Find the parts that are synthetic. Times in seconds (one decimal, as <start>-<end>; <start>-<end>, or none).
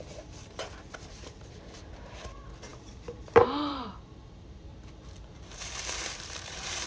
0.0-4.7; 5.2-6.9